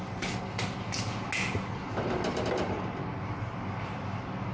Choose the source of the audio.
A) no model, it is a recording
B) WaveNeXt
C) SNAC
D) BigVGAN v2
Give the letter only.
A